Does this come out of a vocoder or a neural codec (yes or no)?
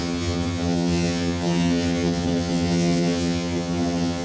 yes